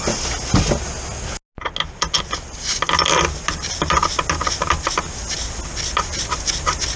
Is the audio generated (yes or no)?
no